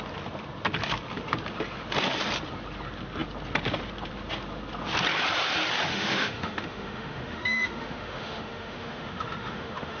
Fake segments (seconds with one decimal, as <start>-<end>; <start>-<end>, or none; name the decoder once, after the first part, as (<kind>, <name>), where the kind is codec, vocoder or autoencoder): 5.9-10.0 (autoencoder, DAC-VAE)